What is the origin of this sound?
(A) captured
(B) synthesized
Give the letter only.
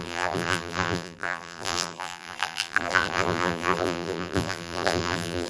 B